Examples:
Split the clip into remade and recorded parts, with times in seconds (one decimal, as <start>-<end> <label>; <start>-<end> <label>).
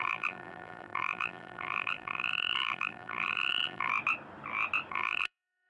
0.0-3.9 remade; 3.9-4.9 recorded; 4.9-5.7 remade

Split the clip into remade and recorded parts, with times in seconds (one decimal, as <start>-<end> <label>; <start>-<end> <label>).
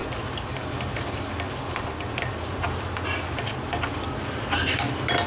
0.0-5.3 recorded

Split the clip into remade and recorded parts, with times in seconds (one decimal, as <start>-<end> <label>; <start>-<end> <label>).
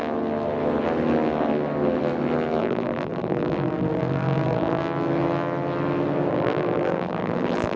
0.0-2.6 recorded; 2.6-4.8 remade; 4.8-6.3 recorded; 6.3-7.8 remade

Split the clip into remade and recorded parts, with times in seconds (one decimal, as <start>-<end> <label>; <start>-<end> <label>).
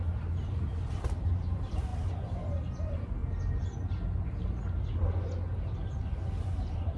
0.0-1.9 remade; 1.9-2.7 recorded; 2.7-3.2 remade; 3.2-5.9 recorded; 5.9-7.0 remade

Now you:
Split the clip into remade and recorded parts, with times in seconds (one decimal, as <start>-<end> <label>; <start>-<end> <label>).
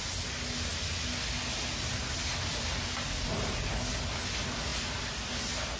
0.0-4.7 recorded; 4.7-5.3 remade; 5.3-5.8 recorded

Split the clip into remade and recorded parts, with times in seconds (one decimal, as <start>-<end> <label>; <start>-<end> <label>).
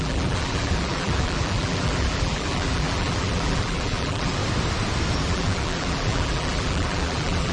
0.0-4.4 remade; 4.4-5.2 recorded; 5.2-7.5 remade